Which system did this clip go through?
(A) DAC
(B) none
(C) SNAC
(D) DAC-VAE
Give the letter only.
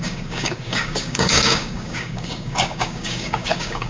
A